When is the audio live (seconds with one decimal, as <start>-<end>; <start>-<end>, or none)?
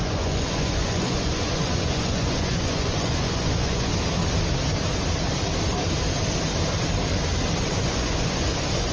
3.9-7.6